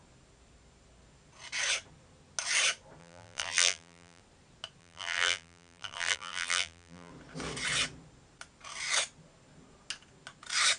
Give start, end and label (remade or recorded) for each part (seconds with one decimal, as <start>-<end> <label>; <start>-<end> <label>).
0.0-3.0 recorded; 3.0-4.2 remade; 4.2-4.8 recorded; 4.8-7.1 remade; 7.1-10.8 recorded

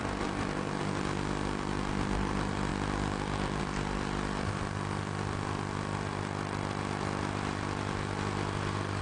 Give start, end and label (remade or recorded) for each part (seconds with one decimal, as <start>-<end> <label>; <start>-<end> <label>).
0.0-9.0 remade

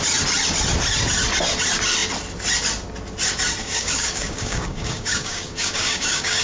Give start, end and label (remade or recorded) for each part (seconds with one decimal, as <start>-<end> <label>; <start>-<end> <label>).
0.0-3.6 recorded; 3.6-6.4 remade

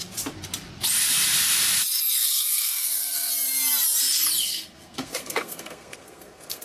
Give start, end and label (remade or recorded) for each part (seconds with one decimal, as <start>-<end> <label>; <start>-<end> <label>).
0.0-2.2 recorded; 2.2-3.3 remade; 3.3-4.4 recorded; 4.4-6.6 remade